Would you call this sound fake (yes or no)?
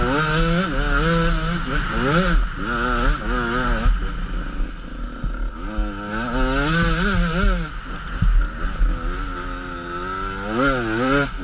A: no